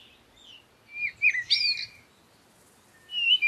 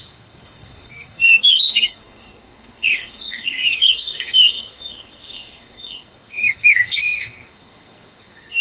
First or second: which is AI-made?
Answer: second